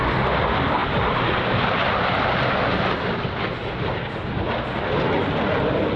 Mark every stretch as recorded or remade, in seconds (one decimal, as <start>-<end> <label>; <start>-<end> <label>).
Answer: 0.0-6.0 recorded